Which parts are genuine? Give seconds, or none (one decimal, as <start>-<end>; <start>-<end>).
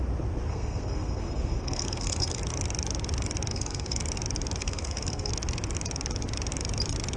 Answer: 0.0-0.5; 2.4-3.5; 4.0-4.6; 5.3-7.2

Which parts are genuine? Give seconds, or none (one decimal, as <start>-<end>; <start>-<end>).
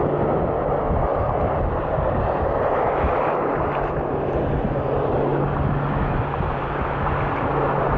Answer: 0.0-1.1; 3.6-8.0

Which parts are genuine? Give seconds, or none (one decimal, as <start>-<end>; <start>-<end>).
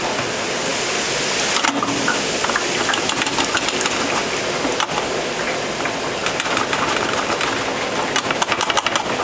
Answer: 0.0-9.2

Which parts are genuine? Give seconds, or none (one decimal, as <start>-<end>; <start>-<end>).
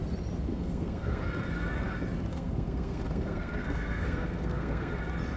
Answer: 0.0-0.5; 1.2-2.3; 4.9-5.4